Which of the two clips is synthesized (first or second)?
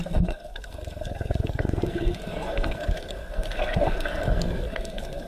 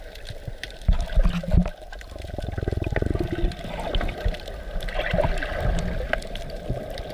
first